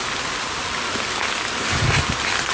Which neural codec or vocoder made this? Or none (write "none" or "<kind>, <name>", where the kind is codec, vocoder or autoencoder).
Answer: none